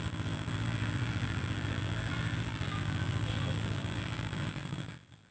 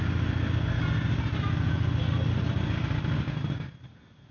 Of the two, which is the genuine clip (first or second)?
second